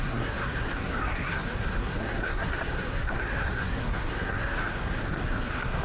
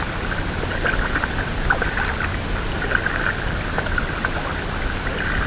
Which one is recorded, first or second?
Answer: second